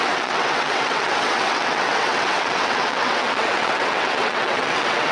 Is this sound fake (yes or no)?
yes